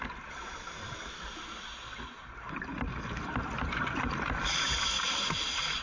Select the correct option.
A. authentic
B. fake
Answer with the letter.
A